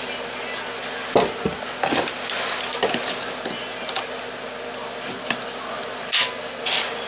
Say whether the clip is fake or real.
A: real